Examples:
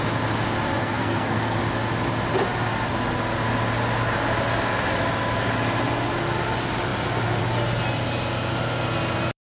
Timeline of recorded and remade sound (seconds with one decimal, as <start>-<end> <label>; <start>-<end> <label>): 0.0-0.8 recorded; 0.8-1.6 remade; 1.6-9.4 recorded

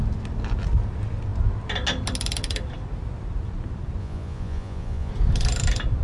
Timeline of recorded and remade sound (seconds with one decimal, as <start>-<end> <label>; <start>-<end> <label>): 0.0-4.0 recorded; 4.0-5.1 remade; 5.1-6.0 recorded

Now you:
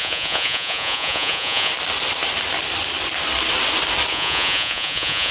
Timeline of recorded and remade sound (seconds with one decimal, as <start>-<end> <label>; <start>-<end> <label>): 0.0-1.7 remade; 1.7-4.1 recorded; 4.1-5.3 remade